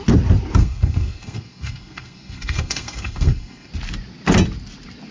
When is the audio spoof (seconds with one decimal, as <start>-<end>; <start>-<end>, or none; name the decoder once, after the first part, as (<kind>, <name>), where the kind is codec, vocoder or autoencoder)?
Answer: 0.6-3.7 (codec, SNAC)